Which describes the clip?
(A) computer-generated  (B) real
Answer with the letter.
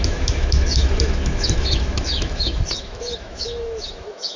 A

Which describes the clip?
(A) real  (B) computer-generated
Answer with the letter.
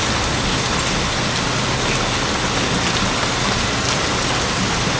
A